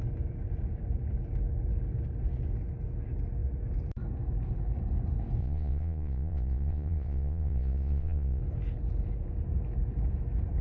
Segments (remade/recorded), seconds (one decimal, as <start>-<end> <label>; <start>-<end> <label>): 0.0-5.4 recorded; 5.4-8.4 remade; 8.4-10.6 recorded